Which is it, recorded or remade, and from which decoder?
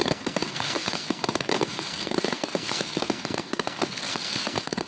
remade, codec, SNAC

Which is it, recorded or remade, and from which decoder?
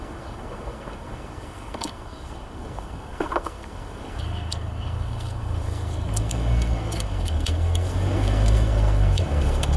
remade, codec, SNAC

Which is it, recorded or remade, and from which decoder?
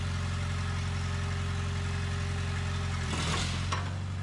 recorded